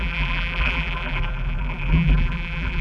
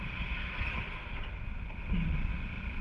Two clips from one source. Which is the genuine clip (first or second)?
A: second